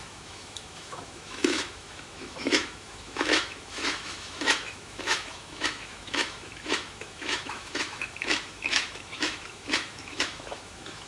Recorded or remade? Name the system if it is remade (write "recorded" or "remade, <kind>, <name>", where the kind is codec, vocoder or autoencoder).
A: remade, autoencoder, DAC-VAE